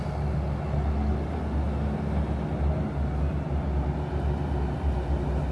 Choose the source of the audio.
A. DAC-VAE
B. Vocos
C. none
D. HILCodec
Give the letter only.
C